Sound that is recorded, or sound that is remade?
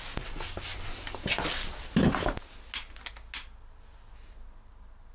recorded